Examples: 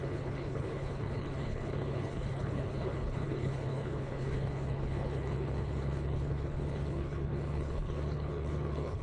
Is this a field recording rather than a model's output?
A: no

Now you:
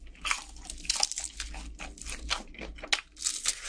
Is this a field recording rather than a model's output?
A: yes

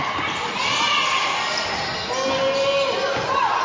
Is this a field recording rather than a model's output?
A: yes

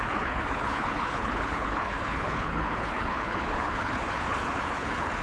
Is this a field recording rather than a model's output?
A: no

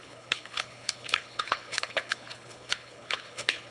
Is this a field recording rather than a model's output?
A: no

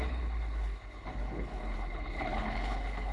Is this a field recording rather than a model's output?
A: no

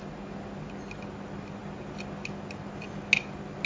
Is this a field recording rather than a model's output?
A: yes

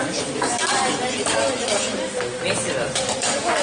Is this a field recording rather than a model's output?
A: yes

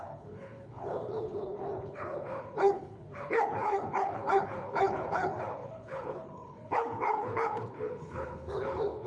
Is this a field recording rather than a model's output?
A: no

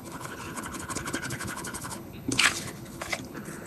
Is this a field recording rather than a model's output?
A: no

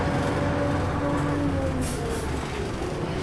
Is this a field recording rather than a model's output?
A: yes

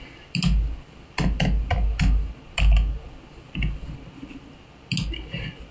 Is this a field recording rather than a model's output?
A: yes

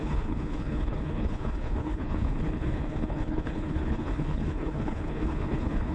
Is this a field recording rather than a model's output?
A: no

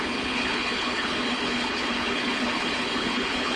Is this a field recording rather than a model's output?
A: no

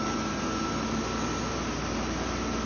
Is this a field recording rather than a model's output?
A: yes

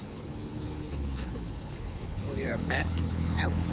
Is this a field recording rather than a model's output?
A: no